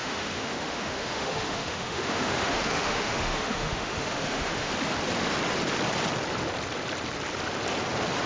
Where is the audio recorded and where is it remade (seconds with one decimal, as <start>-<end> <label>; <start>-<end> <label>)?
0.0-4.7 remade; 4.7-8.3 recorded